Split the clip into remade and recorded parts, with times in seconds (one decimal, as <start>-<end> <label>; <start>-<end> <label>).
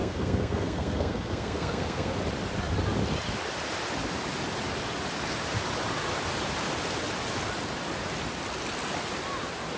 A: 0.0-2.2 remade; 2.2-9.8 recorded